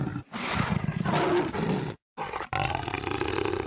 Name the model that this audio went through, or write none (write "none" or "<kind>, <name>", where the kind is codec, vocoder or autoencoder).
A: none